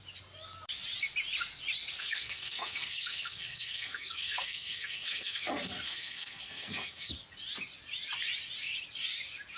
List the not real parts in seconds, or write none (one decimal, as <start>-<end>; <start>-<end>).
1.9-7.1